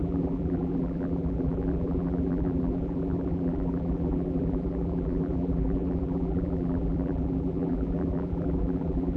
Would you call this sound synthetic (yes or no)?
yes